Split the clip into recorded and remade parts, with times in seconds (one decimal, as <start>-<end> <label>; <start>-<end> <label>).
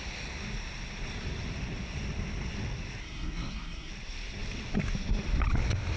0.0-3.0 recorded; 3.0-3.9 remade; 3.9-6.0 recorded